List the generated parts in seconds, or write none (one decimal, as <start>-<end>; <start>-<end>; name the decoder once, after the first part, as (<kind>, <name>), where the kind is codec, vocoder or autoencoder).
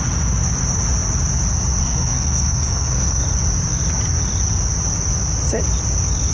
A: 1.8-3.2 (codec, SNAC)